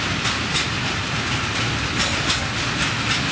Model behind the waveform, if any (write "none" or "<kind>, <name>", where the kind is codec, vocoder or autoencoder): none